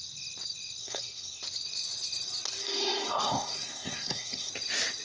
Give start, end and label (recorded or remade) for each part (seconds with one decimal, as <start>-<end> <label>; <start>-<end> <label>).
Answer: 0.0-0.8 recorded; 0.8-1.4 remade; 1.4-2.6 recorded; 2.6-4.5 remade; 4.5-5.0 recorded